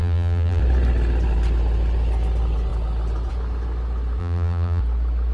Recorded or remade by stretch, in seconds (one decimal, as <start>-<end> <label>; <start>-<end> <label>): 0.0-0.6 remade; 0.6-4.2 recorded; 4.2-4.8 remade; 4.8-5.3 recorded